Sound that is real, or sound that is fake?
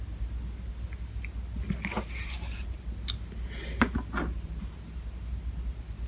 real